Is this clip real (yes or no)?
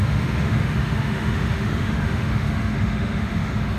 no